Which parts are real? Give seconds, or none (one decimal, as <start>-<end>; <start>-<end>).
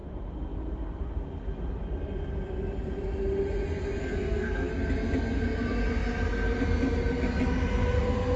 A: 0.0-4.0; 4.7-8.4